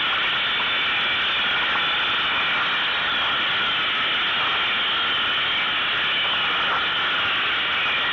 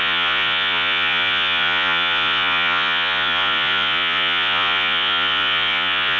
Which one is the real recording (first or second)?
first